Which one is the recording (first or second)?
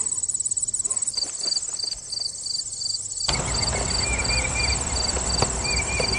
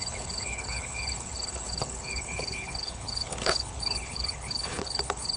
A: first